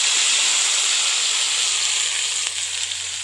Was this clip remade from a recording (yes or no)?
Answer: no